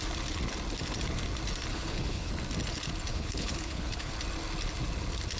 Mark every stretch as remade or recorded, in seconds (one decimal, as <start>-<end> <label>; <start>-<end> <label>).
0.0-1.7 recorded; 1.7-2.3 remade; 2.3-3.1 recorded; 3.1-4.1 remade; 4.1-5.4 recorded